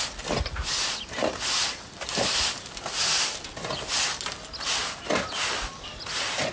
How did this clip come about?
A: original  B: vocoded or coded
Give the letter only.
A